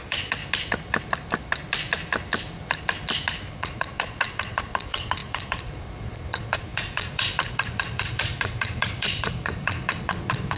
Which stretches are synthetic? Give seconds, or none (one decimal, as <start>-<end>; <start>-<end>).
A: 0.0-0.4; 3.5-10.6

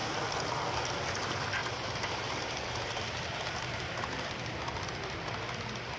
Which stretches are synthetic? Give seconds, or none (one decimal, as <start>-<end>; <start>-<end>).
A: 1.6-4.6

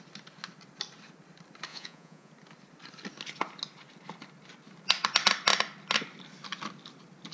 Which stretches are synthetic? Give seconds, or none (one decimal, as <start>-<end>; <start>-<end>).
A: 1.7-2.3